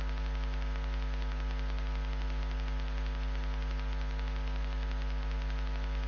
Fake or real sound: real